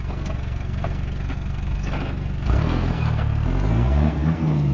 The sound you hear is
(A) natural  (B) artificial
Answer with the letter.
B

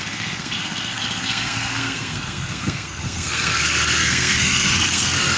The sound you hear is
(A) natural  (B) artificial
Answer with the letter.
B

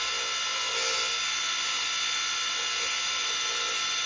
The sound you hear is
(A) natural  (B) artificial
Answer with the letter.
A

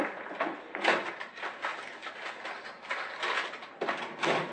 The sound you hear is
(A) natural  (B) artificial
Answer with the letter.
A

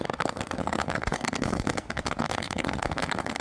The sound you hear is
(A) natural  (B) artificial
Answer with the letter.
B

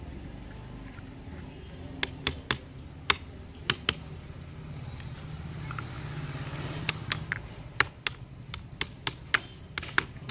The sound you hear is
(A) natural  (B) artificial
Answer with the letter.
A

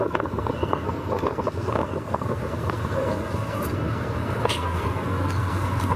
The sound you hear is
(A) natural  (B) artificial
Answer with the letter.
B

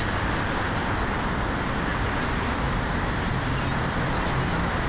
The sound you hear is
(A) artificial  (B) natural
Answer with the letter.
B